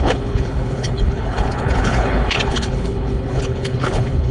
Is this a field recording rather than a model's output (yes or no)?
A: no